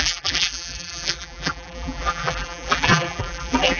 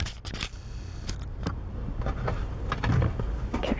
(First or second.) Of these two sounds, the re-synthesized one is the first